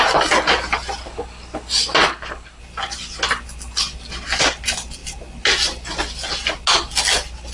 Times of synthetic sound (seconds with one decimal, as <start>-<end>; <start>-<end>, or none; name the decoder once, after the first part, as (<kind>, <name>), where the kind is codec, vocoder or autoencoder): 1.0-1.7 (codec, HILCodec); 2.1-2.6